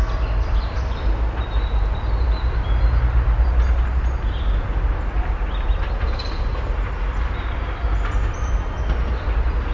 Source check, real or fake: real